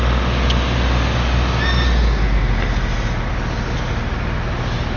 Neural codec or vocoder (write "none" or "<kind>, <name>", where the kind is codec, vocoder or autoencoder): none